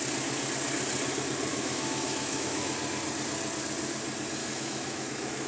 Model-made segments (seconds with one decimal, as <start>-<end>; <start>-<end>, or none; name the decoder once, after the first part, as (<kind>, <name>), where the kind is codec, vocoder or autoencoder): 1.5-2.7 (autoencoder, DAC-VAE); 4.4-5.5

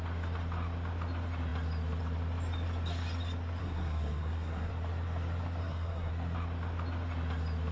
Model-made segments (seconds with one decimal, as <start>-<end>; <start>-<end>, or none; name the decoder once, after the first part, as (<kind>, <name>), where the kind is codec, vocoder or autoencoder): 3.6-4.7 (codec, SNAC); 5.6-6.1

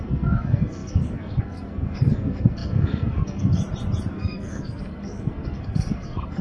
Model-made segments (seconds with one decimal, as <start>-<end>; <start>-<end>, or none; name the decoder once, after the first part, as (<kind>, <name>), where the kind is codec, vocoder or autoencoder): 0.0-3.6 (codec, SNAC); 4.1-6.4

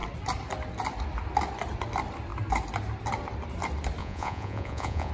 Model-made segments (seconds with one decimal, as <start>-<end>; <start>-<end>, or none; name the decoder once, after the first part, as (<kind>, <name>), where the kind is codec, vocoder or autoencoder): 4.0-5.1 (vocoder, Vocos)

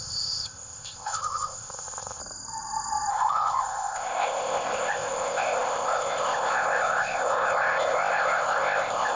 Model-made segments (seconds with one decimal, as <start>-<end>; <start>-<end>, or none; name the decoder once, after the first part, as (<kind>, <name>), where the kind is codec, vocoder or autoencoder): 0.0-2.2 (codec, ZipCodec); 3.1-9.2

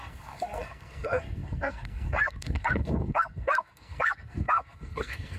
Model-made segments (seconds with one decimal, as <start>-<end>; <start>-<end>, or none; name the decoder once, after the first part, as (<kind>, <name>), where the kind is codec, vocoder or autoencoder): 0.0-5.4 (codec, SNAC)

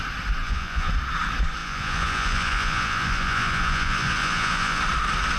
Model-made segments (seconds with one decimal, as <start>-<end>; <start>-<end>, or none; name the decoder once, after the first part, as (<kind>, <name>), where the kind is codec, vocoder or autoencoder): 0.4-0.9 (vocoder, Vocos); 1.6-4.8